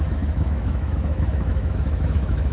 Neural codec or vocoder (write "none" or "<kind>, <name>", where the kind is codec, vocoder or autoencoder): autoencoder, DAC-VAE